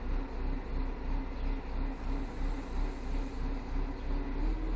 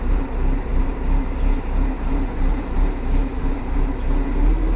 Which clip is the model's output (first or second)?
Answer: second